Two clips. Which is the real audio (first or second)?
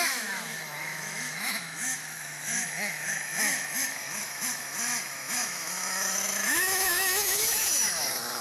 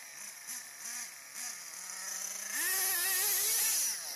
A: second